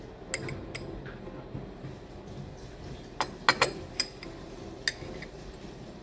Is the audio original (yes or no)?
yes